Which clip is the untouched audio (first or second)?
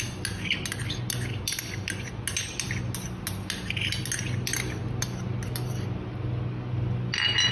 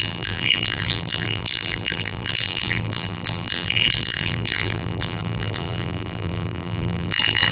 first